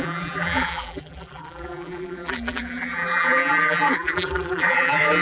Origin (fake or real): fake